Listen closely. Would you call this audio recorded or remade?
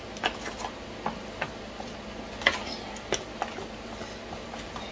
recorded